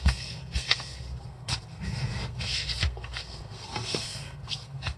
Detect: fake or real fake